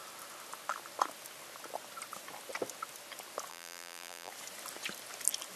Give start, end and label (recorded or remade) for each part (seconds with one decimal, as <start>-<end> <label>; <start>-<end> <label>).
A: 0.0-3.5 recorded; 3.5-4.3 remade; 4.3-5.6 recorded